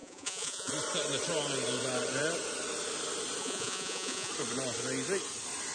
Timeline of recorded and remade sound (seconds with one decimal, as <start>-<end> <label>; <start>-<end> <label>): 0.0-0.7 remade; 0.7-3.4 recorded; 3.4-4.3 remade; 4.3-5.7 recorded